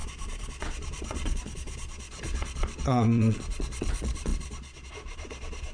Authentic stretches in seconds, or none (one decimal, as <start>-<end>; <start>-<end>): none